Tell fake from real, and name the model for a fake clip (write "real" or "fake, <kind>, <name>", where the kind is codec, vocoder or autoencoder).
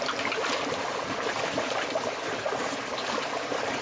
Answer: real